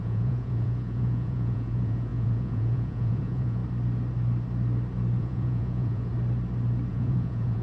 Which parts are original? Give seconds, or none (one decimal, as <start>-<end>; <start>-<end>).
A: 3.6-5.2; 6.1-6.9